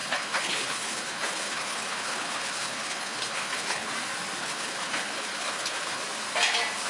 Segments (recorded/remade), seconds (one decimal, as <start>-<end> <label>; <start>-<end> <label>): 0.0-3.9 remade; 3.9-4.4 recorded; 4.4-6.0 remade; 6.0-6.9 recorded